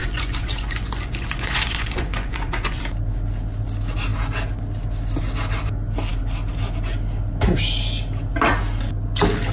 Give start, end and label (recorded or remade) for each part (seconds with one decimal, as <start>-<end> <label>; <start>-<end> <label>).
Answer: 0.0-2.8 remade; 2.8-9.5 recorded